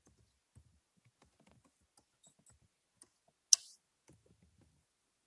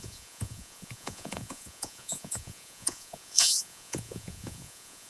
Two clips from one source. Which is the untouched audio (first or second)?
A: first